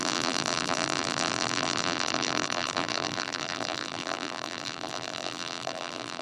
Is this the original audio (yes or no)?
no